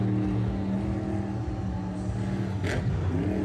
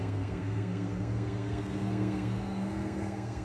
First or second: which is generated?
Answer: second